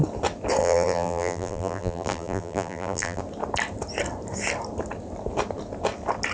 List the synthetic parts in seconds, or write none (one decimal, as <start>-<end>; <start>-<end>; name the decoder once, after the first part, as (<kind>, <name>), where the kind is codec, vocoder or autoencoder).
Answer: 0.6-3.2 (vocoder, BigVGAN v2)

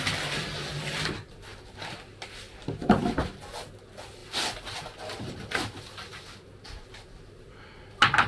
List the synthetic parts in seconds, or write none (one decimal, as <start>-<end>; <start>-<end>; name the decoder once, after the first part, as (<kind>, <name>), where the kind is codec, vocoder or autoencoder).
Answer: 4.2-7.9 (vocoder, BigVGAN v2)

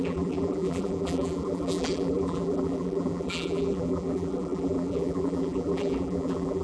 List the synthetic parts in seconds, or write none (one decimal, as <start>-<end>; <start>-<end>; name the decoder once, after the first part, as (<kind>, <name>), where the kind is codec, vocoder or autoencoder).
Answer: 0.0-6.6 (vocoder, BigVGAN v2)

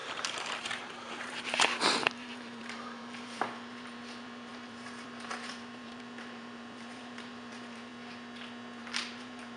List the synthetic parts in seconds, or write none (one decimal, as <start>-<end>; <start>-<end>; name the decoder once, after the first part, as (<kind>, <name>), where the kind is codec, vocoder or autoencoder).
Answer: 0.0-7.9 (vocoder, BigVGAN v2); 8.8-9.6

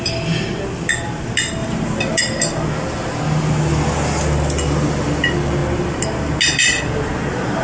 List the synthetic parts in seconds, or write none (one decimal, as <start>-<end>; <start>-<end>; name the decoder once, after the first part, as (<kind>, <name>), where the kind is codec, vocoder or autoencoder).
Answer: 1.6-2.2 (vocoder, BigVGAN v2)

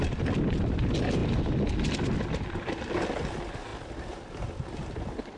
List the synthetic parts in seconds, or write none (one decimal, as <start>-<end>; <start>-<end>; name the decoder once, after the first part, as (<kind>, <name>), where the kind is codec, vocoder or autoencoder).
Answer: none